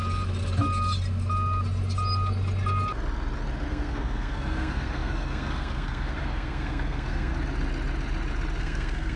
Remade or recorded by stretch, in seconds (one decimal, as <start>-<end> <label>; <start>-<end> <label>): 0.0-3.7 recorded; 3.7-7.3 remade; 7.3-8.6 recorded; 8.6-9.2 remade